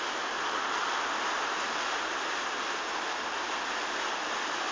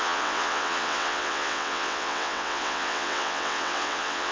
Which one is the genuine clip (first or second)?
first